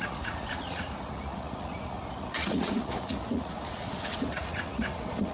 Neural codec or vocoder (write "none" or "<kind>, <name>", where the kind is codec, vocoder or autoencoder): vocoder, Vocos